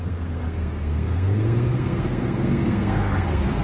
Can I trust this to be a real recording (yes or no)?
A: no